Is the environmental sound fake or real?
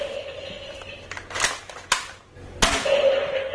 real